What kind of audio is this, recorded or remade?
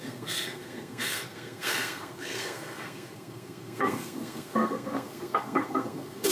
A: remade